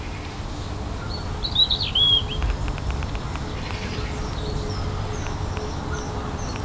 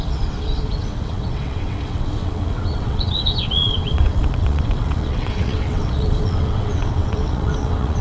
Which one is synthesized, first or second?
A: second